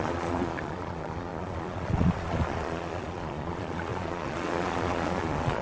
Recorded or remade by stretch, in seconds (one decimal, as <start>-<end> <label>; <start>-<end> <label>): 0.0-5.6 remade